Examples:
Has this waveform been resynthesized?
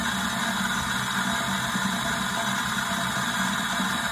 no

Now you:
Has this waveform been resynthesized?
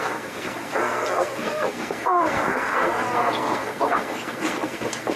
yes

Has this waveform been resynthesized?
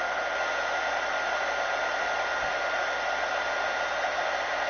no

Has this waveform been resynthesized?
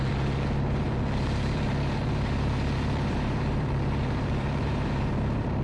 yes